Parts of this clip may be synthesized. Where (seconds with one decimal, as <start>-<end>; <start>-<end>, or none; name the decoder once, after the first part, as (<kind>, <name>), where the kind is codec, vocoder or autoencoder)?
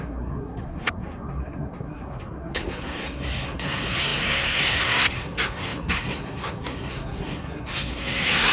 0.0-8.5 (codec, SNAC)